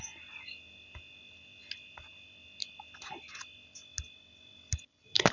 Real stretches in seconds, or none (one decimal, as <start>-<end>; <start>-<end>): 0.0-5.3